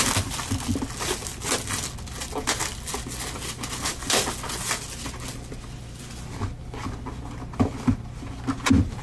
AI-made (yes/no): no